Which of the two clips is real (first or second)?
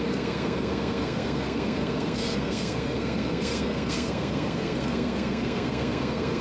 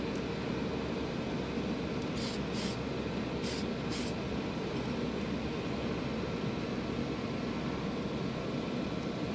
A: second